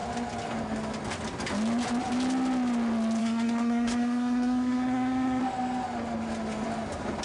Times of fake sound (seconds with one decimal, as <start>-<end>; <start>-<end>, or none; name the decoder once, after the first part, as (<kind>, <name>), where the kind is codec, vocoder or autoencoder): 3.2-5.4 (codec, SNAC)